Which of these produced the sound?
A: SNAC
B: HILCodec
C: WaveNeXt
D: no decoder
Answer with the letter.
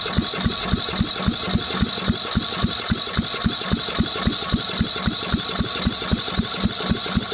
D